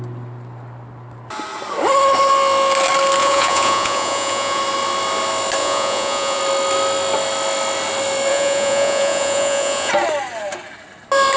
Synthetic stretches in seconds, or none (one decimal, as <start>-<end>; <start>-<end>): 3.2-4.6; 5.6-6.4; 8.3-9.9